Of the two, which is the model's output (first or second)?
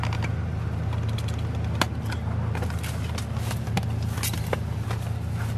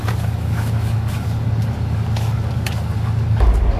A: second